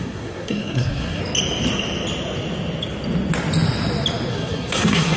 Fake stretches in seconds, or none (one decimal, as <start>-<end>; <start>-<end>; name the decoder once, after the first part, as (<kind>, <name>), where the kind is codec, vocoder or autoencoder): 0.0-1.2 (codec, SNAC); 4.3-5.2